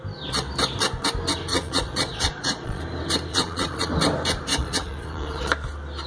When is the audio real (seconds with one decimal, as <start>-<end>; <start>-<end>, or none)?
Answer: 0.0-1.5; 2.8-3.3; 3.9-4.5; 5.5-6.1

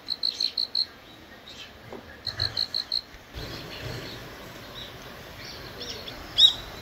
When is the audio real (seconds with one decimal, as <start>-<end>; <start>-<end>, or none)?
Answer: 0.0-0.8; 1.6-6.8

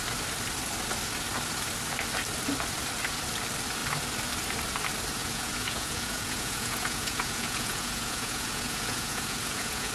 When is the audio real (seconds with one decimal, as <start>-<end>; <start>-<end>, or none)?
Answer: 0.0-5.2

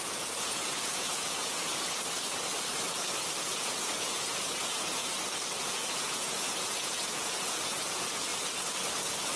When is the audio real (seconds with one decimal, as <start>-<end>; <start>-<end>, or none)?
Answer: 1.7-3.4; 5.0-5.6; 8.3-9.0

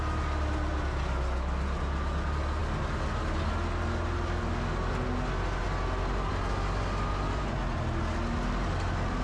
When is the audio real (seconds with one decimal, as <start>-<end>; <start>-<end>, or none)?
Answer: 0.0-9.2

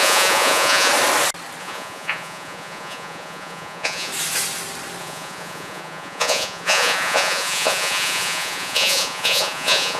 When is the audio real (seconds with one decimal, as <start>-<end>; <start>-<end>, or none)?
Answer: 0.9-1.6; 4.1-5.0

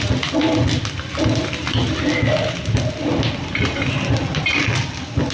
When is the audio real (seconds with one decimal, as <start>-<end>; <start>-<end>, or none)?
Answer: 0.0-5.3